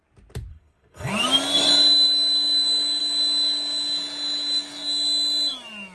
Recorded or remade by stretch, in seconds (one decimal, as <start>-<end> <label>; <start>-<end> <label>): 0.0-0.5 recorded; 0.5-1.1 remade; 1.1-5.9 recorded